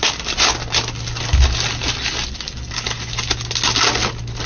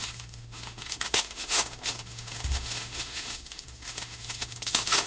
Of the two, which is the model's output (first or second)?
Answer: second